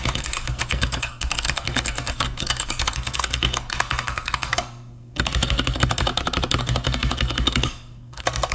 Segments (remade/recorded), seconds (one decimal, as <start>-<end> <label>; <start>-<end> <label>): 0.0-6.1 remade; 6.1-6.6 recorded; 6.6-8.5 remade